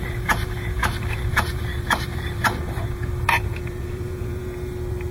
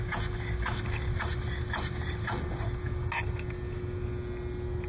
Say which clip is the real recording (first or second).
second